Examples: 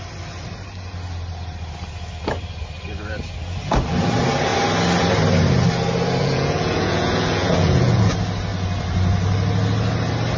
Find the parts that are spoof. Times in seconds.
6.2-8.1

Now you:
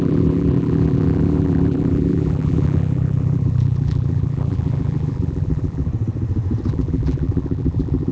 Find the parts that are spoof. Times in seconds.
0.0-5.9; 6.7-8.1

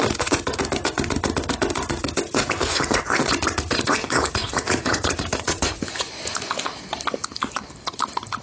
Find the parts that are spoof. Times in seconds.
4.4-6.7

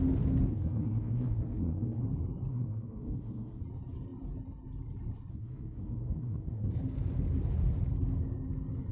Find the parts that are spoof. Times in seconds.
0.5-2.0; 2.5-3.6; 5.3-6.7

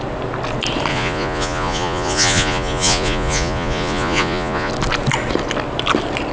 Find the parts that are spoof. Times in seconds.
0.9-4.7

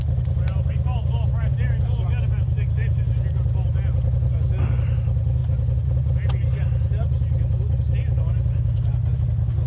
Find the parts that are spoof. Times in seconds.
none